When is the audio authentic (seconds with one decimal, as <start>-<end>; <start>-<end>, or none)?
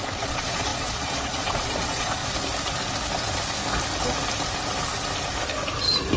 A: 2.2-6.2